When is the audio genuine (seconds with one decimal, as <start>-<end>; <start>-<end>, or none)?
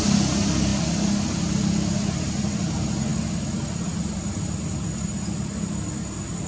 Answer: 0.0-6.5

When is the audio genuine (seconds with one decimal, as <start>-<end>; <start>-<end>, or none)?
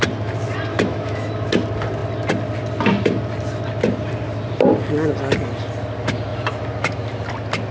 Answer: 0.0-0.7; 1.3-7.7